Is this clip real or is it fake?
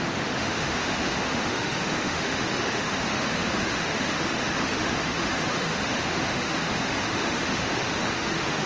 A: fake